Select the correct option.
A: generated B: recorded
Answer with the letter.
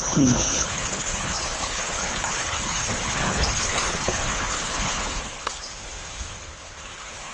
A